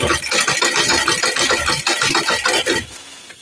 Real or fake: real